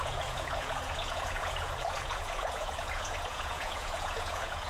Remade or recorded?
remade